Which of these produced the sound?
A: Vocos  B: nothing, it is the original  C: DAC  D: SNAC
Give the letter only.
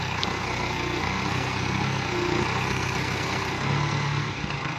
D